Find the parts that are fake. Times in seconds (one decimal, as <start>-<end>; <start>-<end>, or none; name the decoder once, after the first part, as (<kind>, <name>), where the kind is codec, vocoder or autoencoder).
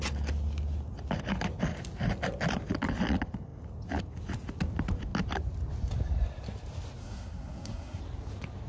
7.0-8.0 (codec, SNAC)